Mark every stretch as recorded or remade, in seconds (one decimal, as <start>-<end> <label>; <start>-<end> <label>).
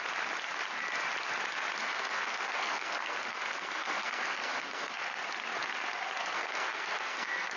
0.0-1.8 recorded; 1.8-5.2 remade; 5.2-6.2 recorded; 6.2-7.6 remade